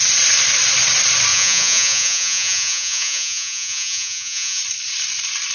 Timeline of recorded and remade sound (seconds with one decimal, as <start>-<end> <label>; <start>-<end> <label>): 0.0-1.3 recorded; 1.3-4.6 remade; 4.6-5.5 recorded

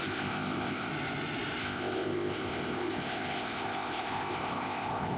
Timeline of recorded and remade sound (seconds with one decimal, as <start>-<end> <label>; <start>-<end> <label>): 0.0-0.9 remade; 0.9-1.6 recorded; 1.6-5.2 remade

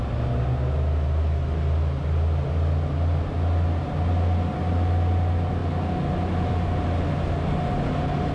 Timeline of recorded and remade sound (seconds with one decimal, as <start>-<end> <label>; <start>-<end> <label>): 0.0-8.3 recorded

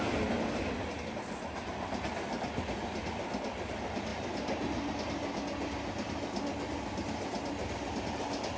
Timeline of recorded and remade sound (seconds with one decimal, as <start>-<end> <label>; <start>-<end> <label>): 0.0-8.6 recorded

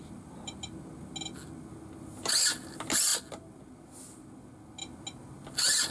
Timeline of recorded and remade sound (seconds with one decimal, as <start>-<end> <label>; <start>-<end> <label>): 0.0-5.9 recorded

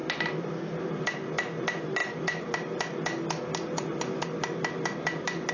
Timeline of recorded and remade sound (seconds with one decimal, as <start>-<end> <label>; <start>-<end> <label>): 0.0-5.5 recorded